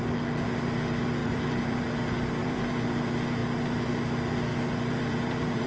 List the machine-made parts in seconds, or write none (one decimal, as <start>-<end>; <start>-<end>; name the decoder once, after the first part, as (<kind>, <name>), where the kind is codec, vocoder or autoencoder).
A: 1.2-1.8 (vocoder, BigVGAN v2); 2.4-2.9; 4.5-5.7